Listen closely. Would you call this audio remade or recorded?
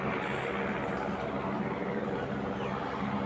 recorded